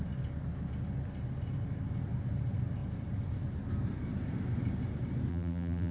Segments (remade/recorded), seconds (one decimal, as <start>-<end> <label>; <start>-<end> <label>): 0.0-5.3 recorded; 5.3-5.9 remade